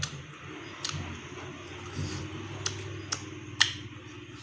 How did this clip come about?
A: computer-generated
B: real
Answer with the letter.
B